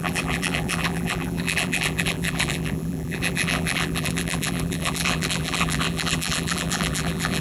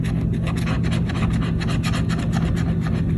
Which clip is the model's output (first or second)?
first